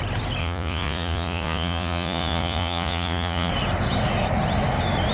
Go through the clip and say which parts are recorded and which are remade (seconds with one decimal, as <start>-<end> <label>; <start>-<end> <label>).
0.0-0.4 recorded; 0.4-3.5 remade; 3.5-5.1 recorded